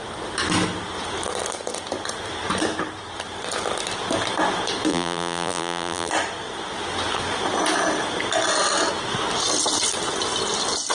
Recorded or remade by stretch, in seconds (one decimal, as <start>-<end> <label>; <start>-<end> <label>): 0.0-4.9 recorded; 4.9-6.1 remade; 6.1-10.9 recorded